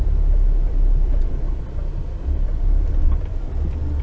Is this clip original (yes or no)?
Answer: no